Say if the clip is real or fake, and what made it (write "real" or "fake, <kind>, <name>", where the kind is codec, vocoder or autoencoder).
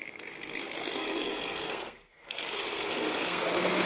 fake, codec, SNAC